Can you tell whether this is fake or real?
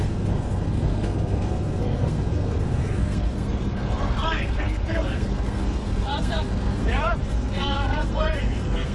fake